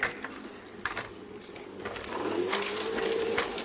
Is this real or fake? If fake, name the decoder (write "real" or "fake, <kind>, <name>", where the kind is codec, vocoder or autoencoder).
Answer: real